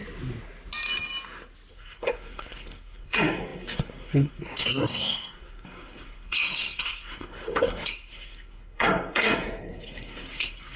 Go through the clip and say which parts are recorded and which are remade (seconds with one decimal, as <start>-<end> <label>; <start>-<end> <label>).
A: 0.0-1.7 recorded; 1.7-10.8 remade